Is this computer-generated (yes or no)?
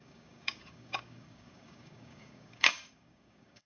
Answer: yes